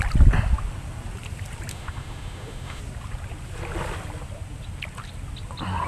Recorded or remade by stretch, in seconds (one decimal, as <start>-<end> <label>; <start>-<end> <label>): 0.0-1.7 recorded; 1.7-2.8 remade; 2.8-5.9 recorded